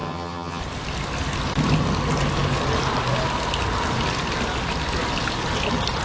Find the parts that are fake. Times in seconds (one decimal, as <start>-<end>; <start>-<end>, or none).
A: 0.0-0.6